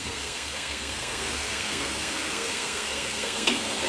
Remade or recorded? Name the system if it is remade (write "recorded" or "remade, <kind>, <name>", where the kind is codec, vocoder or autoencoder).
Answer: remade, codec, SNAC